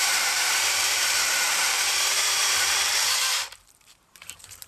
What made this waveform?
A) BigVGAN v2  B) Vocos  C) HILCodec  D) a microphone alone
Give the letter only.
A